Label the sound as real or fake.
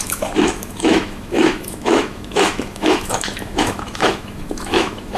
fake